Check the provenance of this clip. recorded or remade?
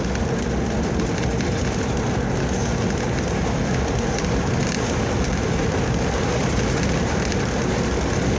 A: recorded